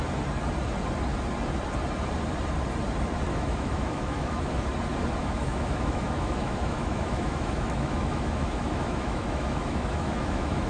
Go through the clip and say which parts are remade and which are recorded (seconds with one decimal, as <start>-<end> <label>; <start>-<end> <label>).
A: 0.0-3.3 recorded; 3.3-4.6 remade; 4.6-5.2 recorded; 5.2-10.7 remade